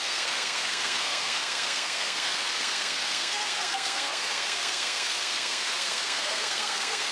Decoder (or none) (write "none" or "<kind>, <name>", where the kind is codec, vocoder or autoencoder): codec, SNAC